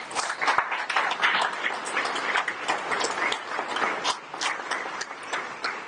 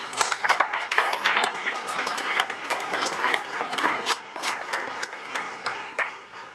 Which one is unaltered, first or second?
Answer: first